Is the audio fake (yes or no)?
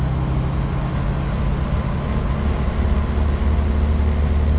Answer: no